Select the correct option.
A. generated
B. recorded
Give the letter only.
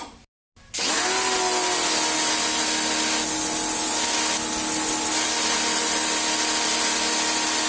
B